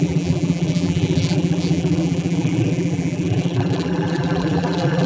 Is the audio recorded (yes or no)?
no